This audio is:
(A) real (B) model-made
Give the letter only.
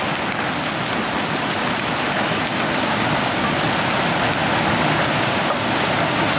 A